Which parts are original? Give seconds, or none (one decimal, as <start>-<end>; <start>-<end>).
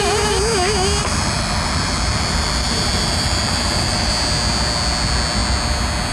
0.0-1.0; 4.1-6.1